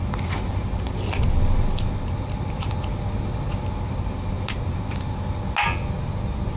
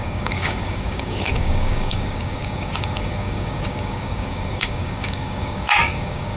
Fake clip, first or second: second